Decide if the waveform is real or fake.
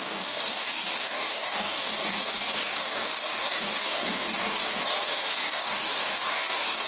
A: fake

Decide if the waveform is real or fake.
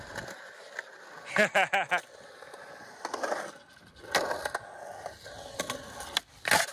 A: real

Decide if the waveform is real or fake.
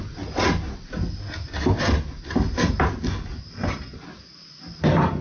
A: real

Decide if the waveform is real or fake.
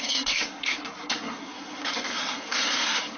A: fake